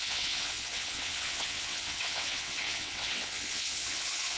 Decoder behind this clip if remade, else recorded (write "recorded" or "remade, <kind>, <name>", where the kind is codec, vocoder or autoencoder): remade, vocoder, WaveNeXt